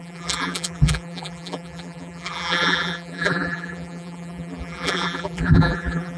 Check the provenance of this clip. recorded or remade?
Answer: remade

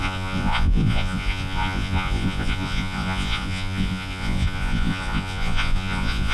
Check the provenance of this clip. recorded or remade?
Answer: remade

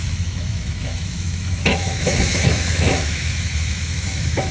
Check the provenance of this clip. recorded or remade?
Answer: remade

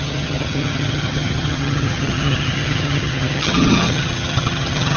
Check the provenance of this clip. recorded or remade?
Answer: remade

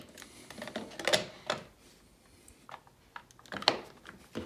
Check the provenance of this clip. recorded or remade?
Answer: recorded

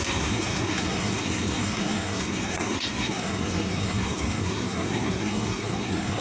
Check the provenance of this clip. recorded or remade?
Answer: remade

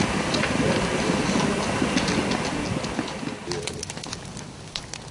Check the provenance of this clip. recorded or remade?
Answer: recorded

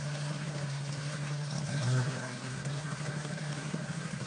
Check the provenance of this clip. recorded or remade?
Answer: remade